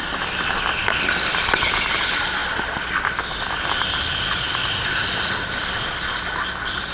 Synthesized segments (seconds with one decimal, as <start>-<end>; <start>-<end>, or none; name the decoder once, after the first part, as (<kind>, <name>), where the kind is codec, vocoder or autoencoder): none